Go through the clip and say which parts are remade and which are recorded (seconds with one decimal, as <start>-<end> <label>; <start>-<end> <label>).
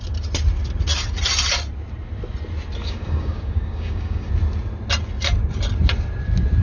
0.0-2.8 recorded; 2.8-4.3 remade; 4.3-6.6 recorded